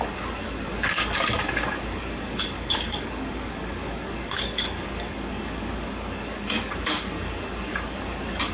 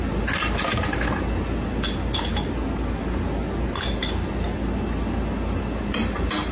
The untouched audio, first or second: second